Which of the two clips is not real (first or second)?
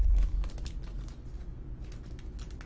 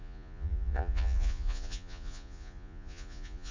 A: second